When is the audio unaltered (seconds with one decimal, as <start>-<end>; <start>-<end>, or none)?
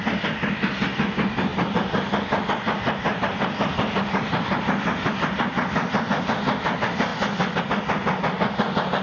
0.0-9.0